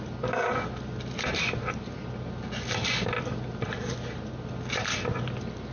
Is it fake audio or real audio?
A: real